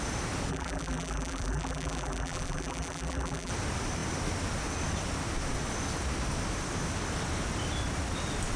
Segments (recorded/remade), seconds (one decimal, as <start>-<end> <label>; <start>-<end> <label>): 0.0-0.5 recorded; 0.5-3.5 remade; 3.5-8.6 recorded